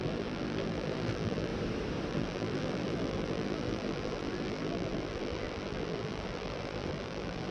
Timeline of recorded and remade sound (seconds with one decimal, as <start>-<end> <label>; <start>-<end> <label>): 0.0-1.5 remade; 1.5-2.1 recorded; 2.1-7.5 remade